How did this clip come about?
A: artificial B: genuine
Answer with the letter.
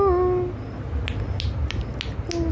B